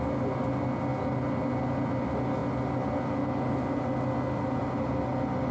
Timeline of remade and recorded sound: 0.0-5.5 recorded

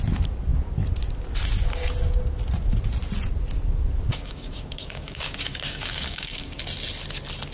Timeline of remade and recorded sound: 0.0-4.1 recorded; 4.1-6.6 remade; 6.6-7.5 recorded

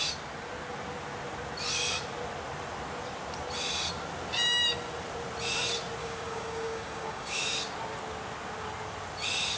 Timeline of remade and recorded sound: 0.0-6.0 recorded; 6.0-7.4 remade; 7.4-9.6 recorded

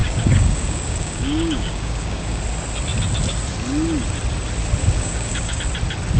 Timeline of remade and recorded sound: 0.0-2.4 remade; 2.4-4.8 recorded; 4.8-5.6 remade; 5.6-6.2 recorded

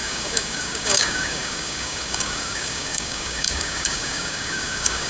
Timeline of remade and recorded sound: 0.0-5.1 remade

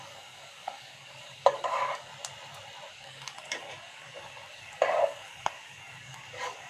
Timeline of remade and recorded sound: 0.0-2.1 remade; 2.1-2.9 recorded; 2.9-6.7 remade

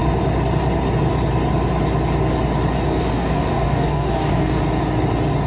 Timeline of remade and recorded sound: 0.0-2.9 recorded; 2.9-4.6 remade; 4.6-5.5 recorded

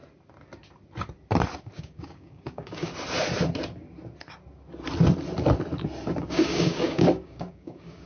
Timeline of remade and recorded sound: 0.0-1.6 recorded; 1.6-2.9 remade; 2.9-6.2 recorded; 6.2-8.1 remade